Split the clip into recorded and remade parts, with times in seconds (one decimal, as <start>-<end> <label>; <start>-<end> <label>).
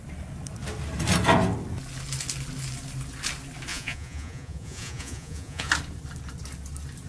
0.0-3.7 recorded; 3.7-5.7 remade; 5.7-7.1 recorded